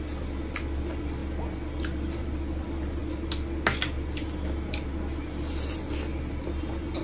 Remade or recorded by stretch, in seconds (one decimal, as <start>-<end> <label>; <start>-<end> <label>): 0.0-7.0 recorded

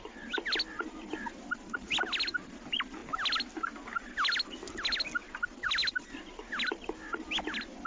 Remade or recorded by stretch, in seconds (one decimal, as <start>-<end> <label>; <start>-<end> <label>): 0.0-7.9 recorded

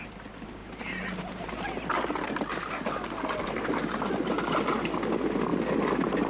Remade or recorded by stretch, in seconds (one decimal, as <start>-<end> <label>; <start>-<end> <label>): 0.0-6.3 recorded

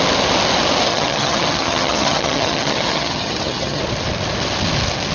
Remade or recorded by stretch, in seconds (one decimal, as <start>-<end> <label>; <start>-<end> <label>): 0.0-0.9 recorded; 0.9-3.8 remade; 3.8-5.1 recorded